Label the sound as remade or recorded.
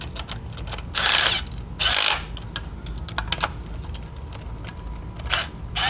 recorded